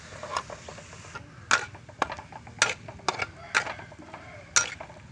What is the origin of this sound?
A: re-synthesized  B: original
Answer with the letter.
B